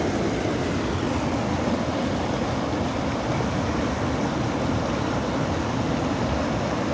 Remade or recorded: recorded